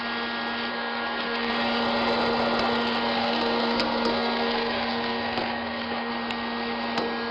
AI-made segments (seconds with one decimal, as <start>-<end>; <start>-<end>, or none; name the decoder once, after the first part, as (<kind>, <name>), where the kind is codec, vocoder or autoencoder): 0.7-1.5 (codec, SNAC); 3.2-6.1